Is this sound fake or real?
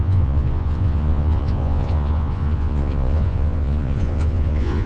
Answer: fake